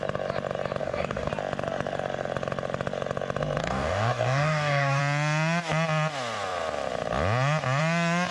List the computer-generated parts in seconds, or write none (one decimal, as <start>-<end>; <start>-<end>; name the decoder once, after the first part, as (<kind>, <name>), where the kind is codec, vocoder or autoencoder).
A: 0.8-1.3 (codec, DAC); 3.6-5.0